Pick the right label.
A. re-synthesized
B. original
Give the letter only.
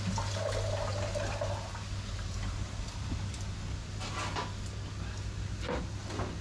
B